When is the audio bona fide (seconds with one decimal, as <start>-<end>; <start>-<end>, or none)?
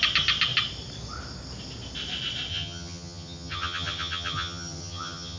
0.0-2.5